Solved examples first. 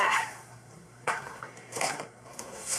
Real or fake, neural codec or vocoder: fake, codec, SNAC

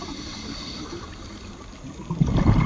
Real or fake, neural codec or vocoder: real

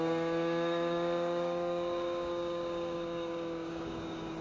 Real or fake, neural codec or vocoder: fake, codec, DAC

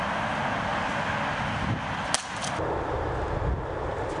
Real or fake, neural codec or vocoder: real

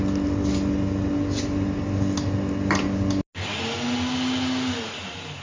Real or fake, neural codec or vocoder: real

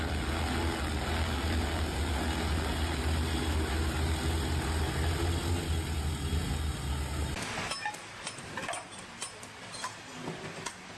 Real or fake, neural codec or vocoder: real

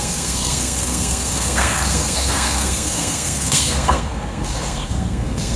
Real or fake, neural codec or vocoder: fake, codec, SNAC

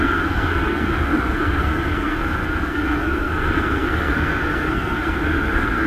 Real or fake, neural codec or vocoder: fake, codec, SNAC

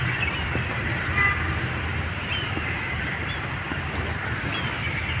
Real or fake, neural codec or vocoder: real